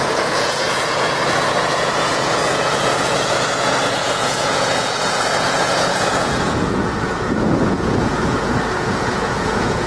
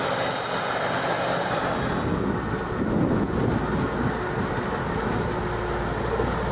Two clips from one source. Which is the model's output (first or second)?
first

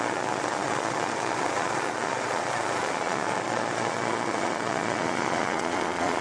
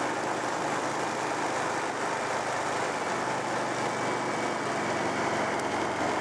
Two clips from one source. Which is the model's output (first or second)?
first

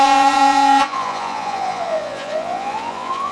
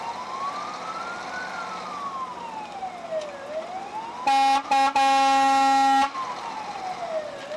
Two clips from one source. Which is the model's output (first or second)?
first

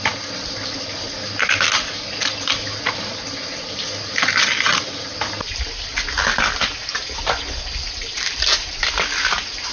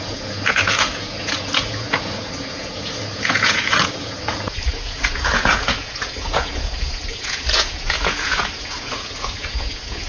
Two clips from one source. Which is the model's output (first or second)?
second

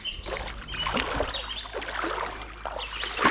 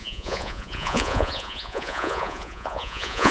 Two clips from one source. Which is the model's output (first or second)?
second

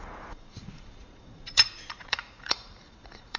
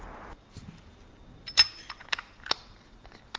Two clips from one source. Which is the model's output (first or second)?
first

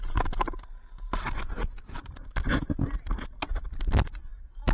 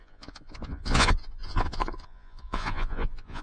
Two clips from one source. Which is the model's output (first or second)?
second